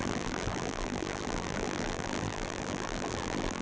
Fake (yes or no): yes